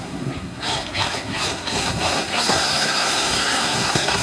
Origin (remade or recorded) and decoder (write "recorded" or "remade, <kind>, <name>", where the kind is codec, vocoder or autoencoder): remade, codec, SNAC